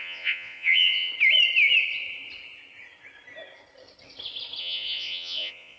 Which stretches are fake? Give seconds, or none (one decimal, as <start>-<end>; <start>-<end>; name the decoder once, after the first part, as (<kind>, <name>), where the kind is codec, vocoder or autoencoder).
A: 0.0-1.1 (vocoder, Vocos); 4.6-5.8